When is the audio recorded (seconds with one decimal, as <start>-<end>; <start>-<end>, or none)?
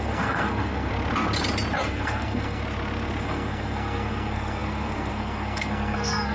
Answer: 0.9-1.8; 2.6-3.2